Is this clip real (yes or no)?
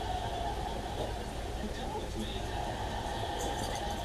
no